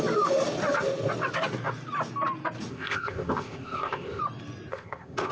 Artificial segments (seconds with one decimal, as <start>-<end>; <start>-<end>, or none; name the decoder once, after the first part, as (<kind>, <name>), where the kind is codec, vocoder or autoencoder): 2.7-4.2 (codec, ZipCodec); 4.7-5.3